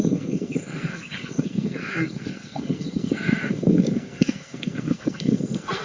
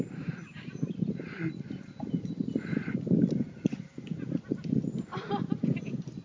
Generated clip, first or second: first